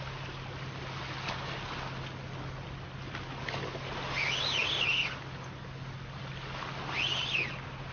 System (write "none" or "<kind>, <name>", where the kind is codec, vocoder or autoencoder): none